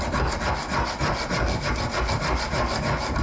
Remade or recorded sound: recorded